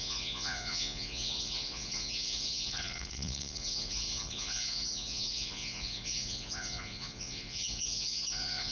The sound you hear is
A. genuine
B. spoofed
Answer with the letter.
B